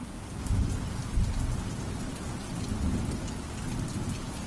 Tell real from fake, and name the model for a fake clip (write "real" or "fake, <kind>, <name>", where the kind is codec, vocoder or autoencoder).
real